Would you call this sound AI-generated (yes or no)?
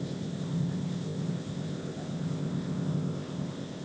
yes